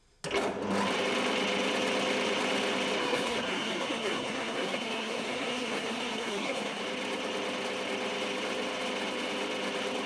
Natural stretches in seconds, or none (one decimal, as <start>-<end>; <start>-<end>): 0.0-3.0; 6.8-10.1